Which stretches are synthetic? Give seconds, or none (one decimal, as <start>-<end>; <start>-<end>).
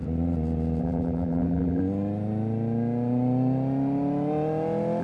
0.8-1.8